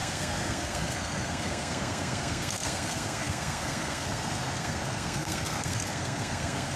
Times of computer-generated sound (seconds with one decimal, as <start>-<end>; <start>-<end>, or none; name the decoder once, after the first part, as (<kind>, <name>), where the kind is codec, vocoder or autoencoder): 0.0-6.8 (codec, SNAC)